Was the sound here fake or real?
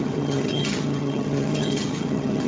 fake